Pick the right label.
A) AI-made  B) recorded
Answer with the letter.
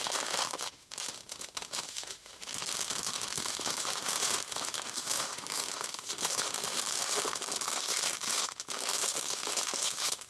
A